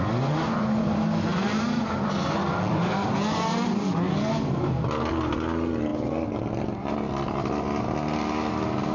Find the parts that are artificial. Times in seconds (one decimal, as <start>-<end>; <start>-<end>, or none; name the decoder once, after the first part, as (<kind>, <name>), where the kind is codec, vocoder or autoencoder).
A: 1.3-3.2 (vocoder, BigVGAN v2)